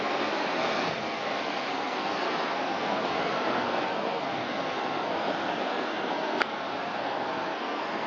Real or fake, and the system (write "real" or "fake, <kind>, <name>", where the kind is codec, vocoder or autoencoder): fake, codec, SNAC